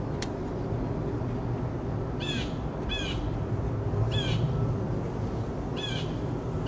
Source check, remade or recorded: recorded